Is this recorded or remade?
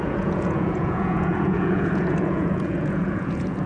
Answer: remade